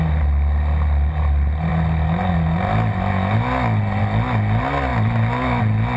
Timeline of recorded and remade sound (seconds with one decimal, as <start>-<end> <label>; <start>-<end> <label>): 0.0-6.0 recorded